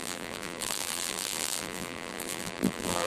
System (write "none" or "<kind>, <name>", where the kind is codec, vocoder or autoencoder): vocoder, BigVGAN v2